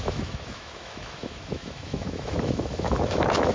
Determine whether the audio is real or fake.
fake